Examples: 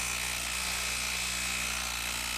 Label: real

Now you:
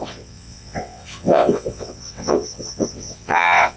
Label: fake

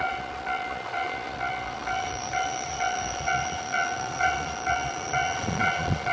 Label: fake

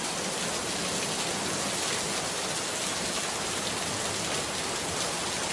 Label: real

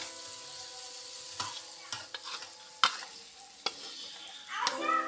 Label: real